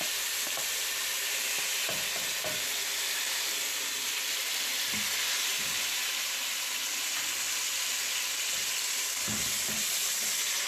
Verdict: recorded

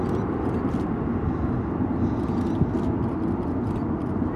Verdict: recorded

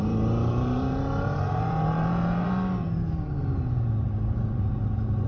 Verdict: remade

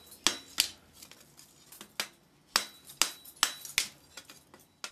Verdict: recorded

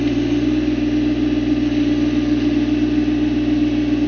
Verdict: recorded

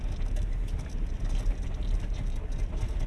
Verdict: recorded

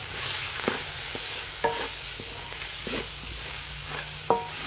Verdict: remade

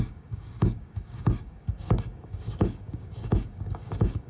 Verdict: remade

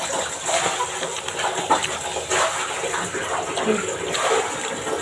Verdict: recorded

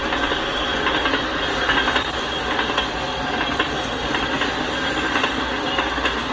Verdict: recorded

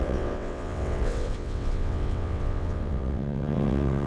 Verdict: remade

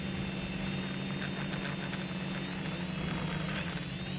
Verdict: recorded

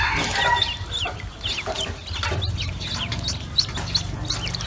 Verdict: recorded